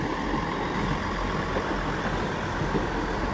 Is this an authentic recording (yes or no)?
yes